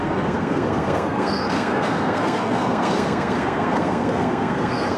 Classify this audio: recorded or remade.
remade